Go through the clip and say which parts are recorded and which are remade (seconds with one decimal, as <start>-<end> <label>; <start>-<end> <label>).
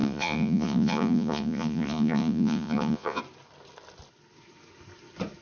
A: 0.0-3.2 remade; 3.2-5.4 recorded